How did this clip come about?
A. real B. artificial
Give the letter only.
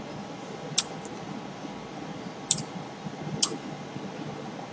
A